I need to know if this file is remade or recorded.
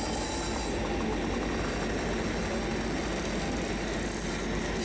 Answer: recorded